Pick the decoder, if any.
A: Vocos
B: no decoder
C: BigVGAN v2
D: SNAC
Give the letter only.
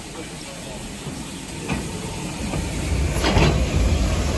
B